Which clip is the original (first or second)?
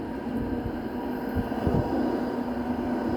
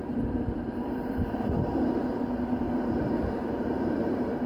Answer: first